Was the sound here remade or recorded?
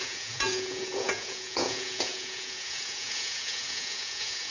remade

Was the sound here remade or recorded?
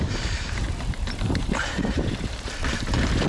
remade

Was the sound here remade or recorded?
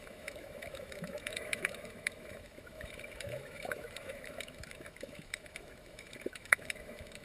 remade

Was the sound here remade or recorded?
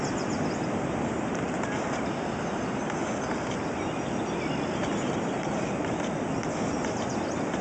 recorded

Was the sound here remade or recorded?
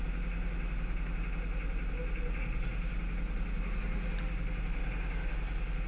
recorded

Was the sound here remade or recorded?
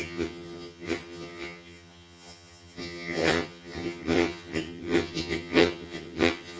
remade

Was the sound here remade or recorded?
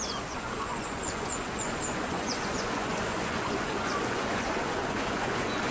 remade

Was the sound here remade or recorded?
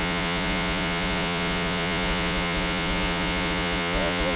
remade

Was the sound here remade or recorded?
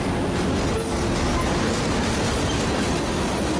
recorded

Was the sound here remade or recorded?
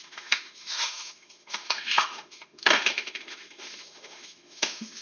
remade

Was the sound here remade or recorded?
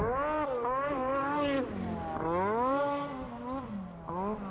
recorded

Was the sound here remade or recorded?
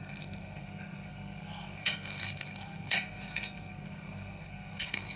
remade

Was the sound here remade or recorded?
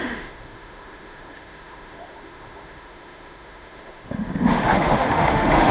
remade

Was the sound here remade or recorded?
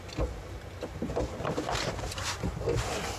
recorded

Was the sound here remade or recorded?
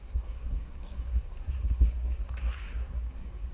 remade